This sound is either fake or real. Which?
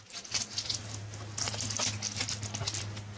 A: real